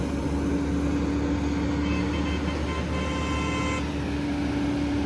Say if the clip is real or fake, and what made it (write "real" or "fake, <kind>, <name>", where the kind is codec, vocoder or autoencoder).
real